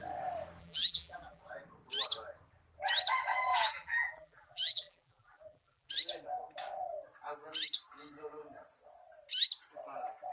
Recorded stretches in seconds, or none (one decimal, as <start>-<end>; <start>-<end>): 0.0-0.6; 1.4-3.5; 5.9-10.3